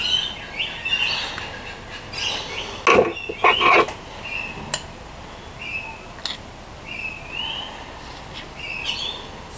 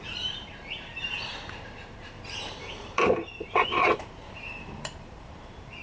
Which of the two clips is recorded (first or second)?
first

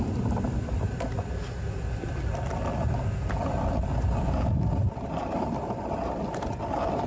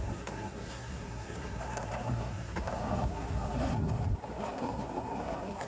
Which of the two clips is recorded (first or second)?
first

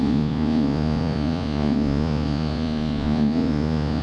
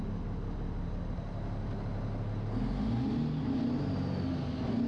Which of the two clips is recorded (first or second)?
second